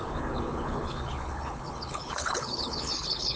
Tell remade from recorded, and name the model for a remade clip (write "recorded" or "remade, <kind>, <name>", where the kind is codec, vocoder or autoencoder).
remade, codec, HILCodec